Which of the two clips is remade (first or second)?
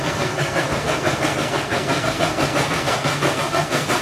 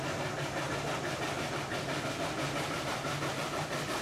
first